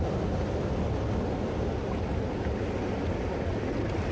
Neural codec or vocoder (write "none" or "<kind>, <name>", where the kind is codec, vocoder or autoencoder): none